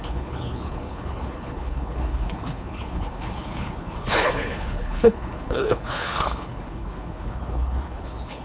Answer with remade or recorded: remade